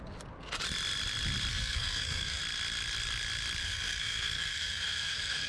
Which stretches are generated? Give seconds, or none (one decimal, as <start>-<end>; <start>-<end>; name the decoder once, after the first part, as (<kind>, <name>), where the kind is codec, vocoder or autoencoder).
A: 1.5-2.4 (codec, SNAC); 3.6-5.5